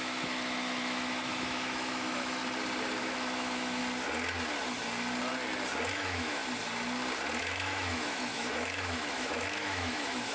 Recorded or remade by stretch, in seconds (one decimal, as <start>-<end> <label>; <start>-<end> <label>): 0.0-2.4 remade; 2.4-3.0 recorded; 3.0-3.8 remade; 3.8-5.9 recorded; 5.9-6.4 remade; 6.4-7.4 recorded; 7.4-10.3 remade